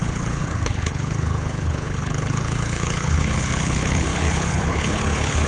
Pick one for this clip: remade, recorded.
remade